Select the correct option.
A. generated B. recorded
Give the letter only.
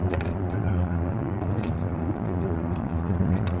A